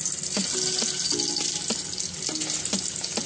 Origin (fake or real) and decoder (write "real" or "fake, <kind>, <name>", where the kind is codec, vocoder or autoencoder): real